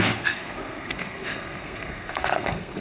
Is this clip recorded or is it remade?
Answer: remade